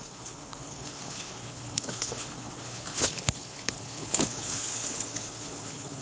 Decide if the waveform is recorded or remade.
remade